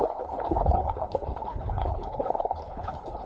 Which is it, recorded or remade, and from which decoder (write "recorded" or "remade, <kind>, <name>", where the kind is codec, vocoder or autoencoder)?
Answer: remade, codec, HILCodec